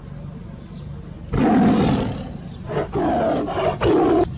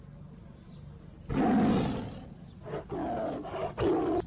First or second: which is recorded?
second